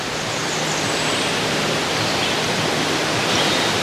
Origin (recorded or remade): recorded